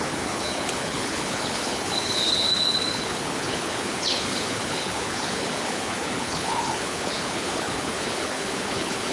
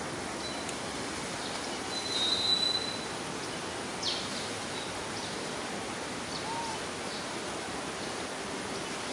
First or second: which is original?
second